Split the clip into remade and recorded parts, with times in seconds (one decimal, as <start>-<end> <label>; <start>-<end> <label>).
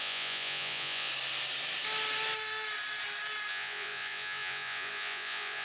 0.0-1.1 remade; 1.1-3.5 recorded; 3.5-5.6 remade